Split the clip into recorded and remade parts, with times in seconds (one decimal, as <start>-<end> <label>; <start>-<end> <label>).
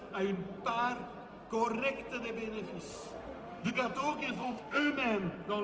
0.0-2.9 recorded; 2.9-3.7 remade; 3.7-4.4 recorded; 4.4-4.9 remade; 4.9-5.6 recorded